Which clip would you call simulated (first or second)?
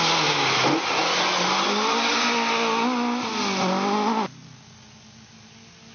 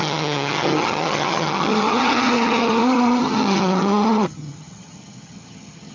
second